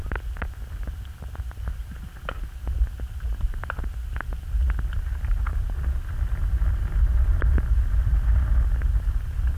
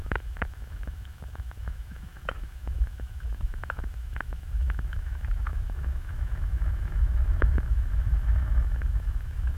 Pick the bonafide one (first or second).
first